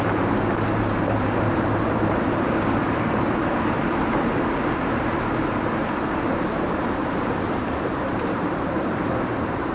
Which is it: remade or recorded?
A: remade